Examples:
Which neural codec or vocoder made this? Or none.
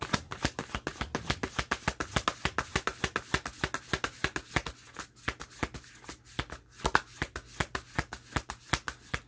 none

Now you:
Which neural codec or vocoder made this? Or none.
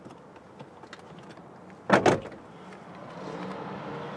none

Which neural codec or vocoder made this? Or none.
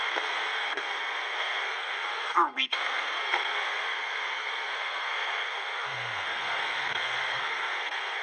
codec, SNAC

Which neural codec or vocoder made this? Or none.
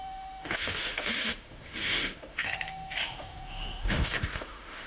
autoencoder, DAC-VAE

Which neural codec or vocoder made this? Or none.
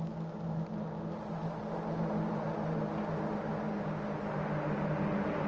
none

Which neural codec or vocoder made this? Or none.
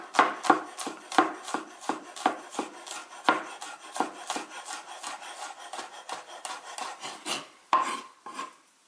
vocoder, BigVGAN v2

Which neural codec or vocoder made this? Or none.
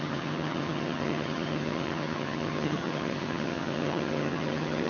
vocoder, HiFi-GAN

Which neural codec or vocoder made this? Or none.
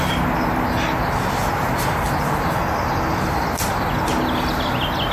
none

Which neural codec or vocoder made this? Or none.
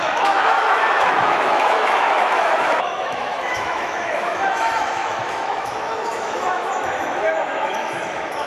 autoencoder, DAC-VAE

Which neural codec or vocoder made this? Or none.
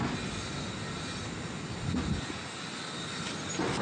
none